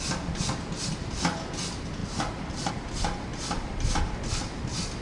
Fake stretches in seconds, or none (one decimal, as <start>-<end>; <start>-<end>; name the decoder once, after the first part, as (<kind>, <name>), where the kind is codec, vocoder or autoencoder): 2.0-2.7 (vocoder, BigVGAN v2); 3.3-4.0